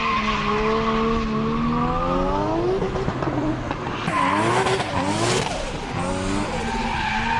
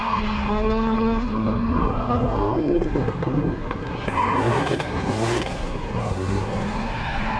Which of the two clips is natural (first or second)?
first